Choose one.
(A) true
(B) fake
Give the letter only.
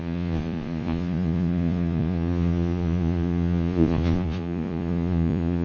B